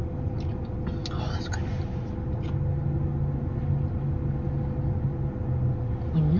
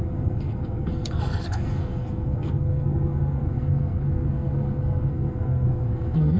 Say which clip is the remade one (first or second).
second